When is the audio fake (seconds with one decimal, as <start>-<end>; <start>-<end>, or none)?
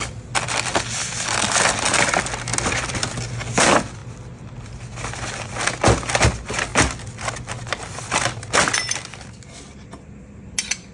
none